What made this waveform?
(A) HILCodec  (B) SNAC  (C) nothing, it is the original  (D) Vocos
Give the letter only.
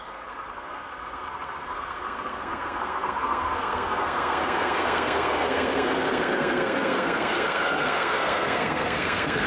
B